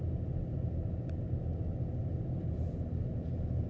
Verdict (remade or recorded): recorded